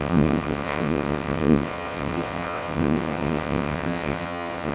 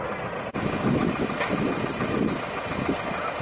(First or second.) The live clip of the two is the second